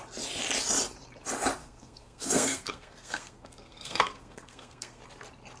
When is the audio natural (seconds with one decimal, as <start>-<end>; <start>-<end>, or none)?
0.0-1.6; 5.0-5.6